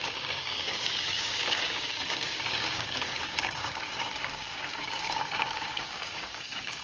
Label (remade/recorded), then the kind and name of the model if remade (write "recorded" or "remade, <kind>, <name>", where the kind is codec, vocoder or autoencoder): remade, codec, DAC